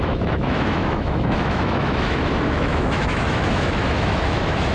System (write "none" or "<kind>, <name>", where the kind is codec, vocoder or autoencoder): autoencoder, DAC-VAE